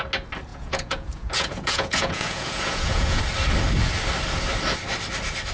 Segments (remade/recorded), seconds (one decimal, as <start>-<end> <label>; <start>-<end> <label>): 0.0-0.5 recorded; 0.5-3.2 remade; 3.2-5.5 recorded